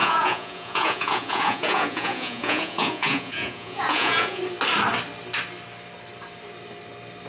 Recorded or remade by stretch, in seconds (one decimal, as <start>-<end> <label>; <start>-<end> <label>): 0.0-4.4 remade; 4.4-7.3 recorded